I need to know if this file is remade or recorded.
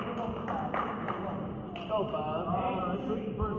recorded